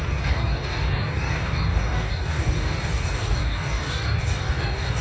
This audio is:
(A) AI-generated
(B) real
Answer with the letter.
A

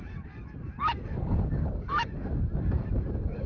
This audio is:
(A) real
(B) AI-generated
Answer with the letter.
B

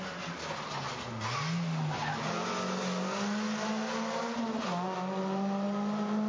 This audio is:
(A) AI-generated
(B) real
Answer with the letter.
B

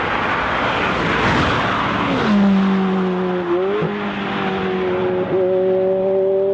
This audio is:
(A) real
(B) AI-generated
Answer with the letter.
A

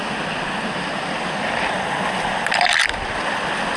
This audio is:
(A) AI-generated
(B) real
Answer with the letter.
B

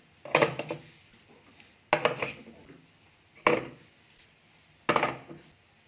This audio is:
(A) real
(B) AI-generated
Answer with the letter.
A